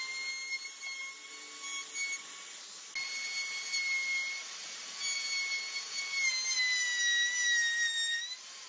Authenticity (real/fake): real